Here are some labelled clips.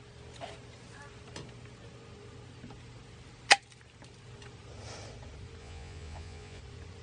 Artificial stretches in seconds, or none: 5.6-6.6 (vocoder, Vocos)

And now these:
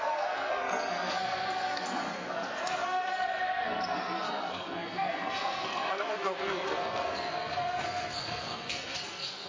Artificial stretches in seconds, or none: 0.0-9.5 (codec, SNAC)